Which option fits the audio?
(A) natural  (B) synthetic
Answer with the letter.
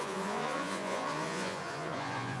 B